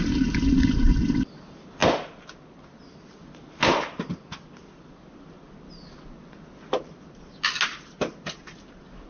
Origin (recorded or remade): recorded